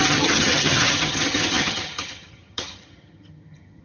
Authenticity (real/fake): fake